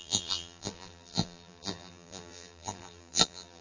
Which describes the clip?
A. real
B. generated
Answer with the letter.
B